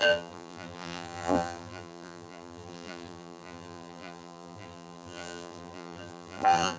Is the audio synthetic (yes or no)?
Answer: yes